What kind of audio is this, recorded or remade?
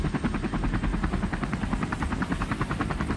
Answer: recorded